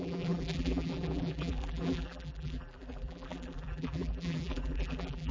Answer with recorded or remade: remade